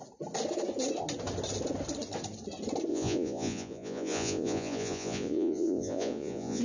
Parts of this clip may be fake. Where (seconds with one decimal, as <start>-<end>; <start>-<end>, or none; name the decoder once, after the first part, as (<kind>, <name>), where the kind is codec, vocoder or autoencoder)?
2.9-6.6 (vocoder, Vocos)